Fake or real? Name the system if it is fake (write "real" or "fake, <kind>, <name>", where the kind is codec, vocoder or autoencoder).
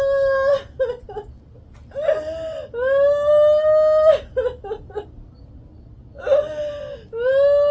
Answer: real